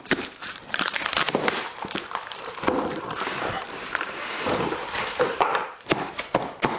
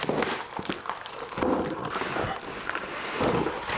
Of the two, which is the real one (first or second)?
second